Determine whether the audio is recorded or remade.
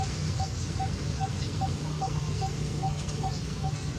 remade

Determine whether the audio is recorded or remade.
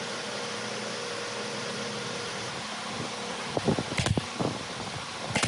recorded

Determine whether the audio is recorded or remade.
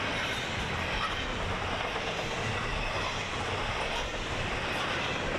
recorded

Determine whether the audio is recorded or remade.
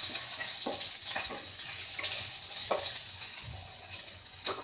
remade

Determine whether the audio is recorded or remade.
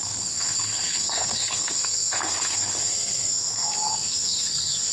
remade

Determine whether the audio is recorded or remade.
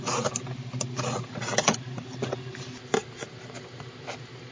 recorded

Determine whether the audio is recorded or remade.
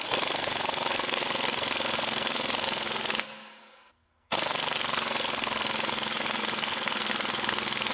remade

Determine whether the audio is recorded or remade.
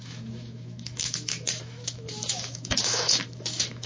remade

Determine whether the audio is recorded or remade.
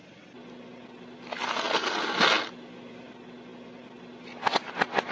recorded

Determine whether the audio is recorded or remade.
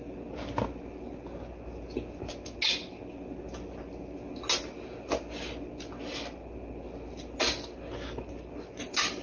recorded